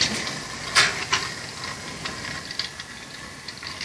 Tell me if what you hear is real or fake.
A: real